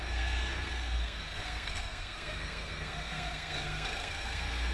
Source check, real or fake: fake